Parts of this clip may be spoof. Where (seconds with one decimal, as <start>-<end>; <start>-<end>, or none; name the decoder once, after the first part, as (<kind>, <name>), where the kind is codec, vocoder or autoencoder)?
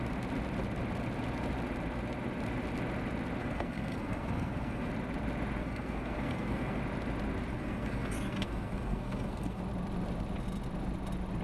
3.4-4.9 (codec, SNAC); 5.6-6.8; 7.5-9.6